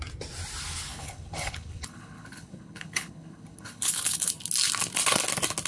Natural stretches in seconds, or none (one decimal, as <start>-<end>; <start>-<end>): 0.0-0.9; 4.3-5.7